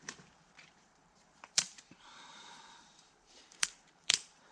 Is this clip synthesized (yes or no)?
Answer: yes